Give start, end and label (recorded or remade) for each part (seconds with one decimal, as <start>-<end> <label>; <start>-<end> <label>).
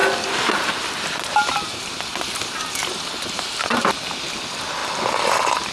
0.0-0.7 recorded; 0.7-1.4 remade; 1.4-2.2 recorded; 2.2-2.8 remade; 2.8-3.8 recorded; 3.8-4.8 remade; 4.8-5.7 recorded